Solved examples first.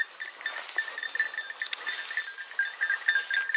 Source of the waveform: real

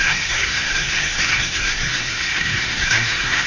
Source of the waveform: fake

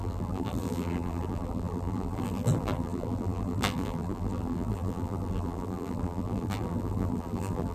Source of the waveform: fake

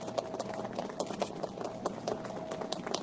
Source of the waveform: real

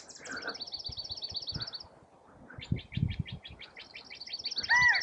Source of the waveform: real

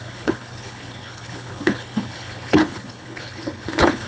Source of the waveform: fake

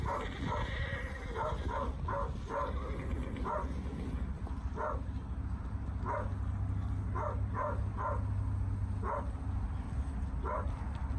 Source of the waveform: real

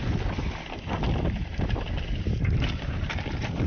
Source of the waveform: real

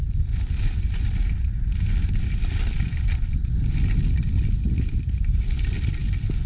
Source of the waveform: real